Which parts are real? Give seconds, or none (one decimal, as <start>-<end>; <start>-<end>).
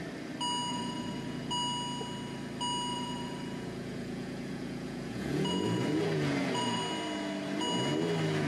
0.0-0.7; 1.5-2.9; 6.8-8.5